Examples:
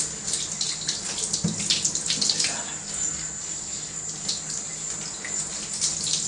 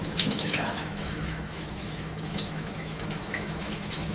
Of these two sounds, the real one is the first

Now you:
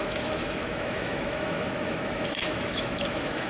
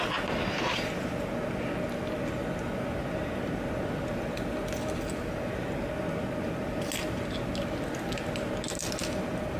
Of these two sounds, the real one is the second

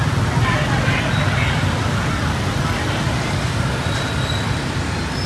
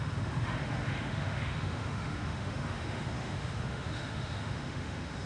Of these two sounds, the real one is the first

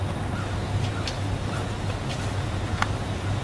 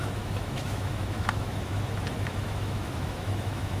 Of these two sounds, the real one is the first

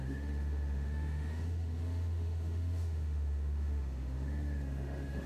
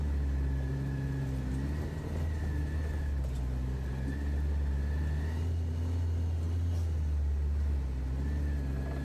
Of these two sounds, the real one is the second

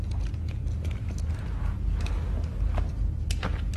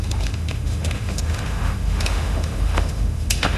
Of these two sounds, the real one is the first